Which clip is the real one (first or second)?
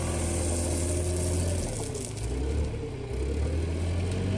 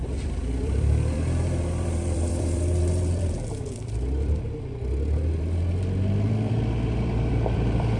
first